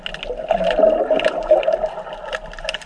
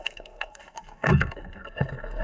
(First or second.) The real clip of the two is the first